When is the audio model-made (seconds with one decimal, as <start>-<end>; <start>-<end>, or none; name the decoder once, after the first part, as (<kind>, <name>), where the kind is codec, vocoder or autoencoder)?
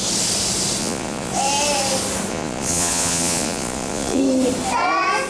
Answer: 0.8-1.3 (vocoder, Vocos); 2.3-4.2